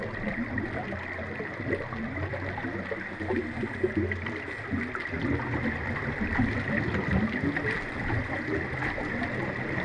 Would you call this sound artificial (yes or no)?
no